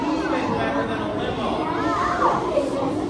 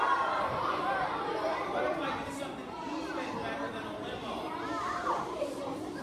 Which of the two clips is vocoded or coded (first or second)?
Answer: second